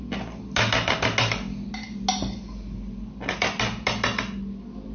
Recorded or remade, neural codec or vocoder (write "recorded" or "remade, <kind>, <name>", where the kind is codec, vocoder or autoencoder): recorded